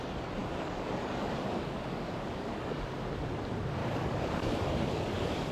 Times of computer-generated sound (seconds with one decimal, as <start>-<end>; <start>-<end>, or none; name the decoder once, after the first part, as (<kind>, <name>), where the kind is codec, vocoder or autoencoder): 0.4-2.9 (codec, DAC); 3.8-5.5